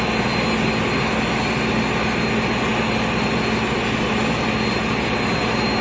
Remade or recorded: recorded